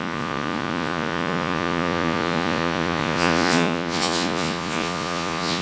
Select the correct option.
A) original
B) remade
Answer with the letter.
B